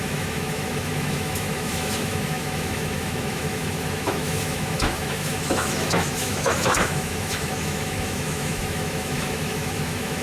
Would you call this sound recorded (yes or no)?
no